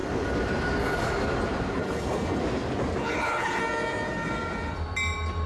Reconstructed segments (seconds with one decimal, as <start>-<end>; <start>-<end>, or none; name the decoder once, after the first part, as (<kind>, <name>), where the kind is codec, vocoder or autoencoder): 1.8-2.4 (codec, HILCodec); 3.0-3.6